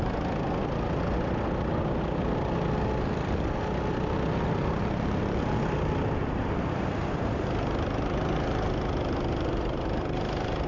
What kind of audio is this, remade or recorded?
remade